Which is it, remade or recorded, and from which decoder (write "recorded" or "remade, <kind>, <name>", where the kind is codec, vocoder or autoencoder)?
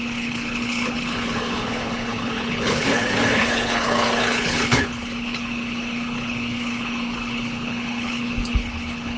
remade, codec, HILCodec